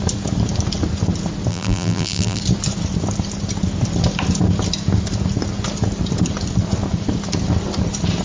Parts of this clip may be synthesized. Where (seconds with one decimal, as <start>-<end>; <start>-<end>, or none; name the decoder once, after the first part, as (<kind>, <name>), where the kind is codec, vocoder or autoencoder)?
1.5-2.4 (vocoder, BigVGAN v2)